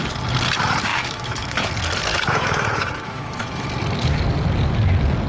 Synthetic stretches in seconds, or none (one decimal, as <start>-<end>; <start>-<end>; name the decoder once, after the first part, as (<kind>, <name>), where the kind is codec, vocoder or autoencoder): 0.9-1.7 (autoencoder, DAC-VAE); 2.1-3.7